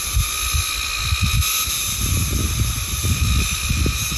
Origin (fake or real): real